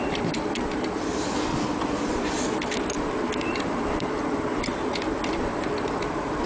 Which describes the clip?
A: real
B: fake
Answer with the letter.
B